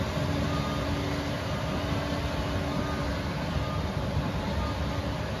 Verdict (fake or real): real